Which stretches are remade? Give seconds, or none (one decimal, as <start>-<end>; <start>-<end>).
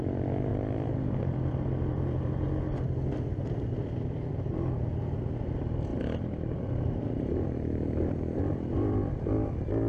0.5-2.5; 5.9-9.9